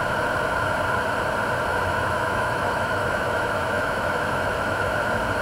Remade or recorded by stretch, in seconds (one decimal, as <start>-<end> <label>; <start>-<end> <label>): 0.0-1.7 recorded; 1.7-4.9 remade; 4.9-5.4 recorded